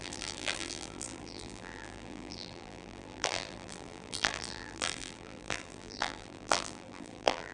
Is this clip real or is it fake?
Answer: fake